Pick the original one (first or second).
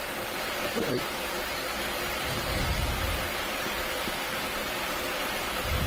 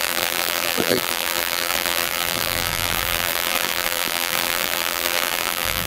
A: first